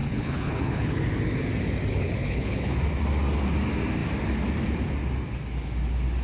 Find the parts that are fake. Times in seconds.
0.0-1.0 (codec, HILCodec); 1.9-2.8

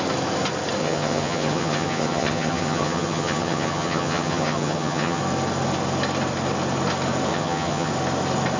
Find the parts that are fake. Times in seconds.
0.8-5.2 (vocoder, HiFi-GAN); 7.3-7.9